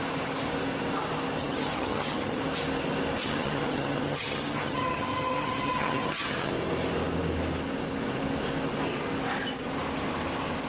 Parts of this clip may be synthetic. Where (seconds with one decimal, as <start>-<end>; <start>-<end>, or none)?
1.4-2.4; 3.2-6.5